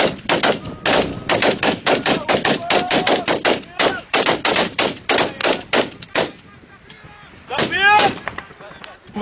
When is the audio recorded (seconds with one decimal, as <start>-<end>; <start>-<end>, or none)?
0.0-5.4; 7.6-9.2